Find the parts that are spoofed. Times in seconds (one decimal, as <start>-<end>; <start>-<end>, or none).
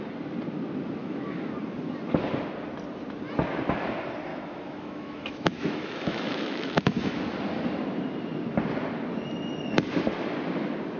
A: 1.0-1.5; 4.3-7.2